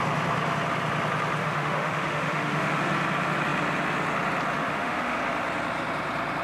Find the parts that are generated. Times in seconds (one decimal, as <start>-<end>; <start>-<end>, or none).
1.4-2.8; 4.6-5.2

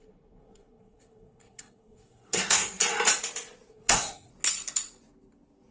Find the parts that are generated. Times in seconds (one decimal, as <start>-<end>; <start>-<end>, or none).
0.0-2.8; 3.7-4.3

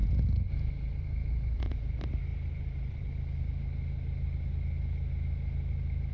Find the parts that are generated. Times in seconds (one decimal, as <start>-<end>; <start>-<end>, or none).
0.0-0.7; 1.2-1.9

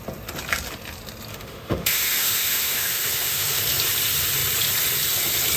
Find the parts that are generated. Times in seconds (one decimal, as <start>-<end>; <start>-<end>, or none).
1.3-3.6

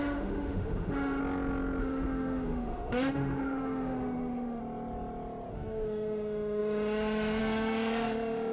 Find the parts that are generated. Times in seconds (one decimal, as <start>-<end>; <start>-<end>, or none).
0.0-1.2; 1.8-4.6; 5.5-8.5

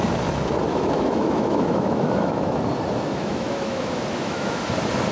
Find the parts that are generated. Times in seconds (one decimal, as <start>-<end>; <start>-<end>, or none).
0.7-2.6; 3.1-4.6

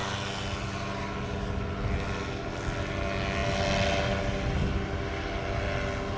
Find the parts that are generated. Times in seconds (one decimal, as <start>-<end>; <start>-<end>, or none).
none

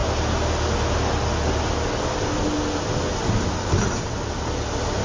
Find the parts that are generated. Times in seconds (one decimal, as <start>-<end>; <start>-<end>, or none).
none